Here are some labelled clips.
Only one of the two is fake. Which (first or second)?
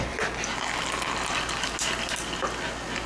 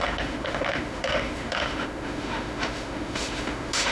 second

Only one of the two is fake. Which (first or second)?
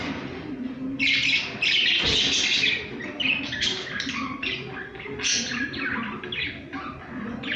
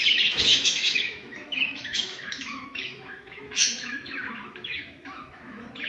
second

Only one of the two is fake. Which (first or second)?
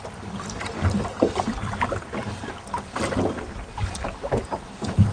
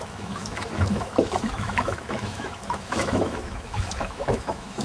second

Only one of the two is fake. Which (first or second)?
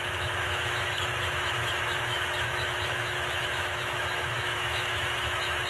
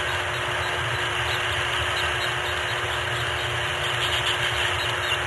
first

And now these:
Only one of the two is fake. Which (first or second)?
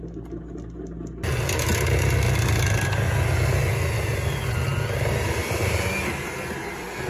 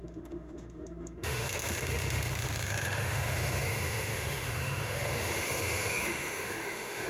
second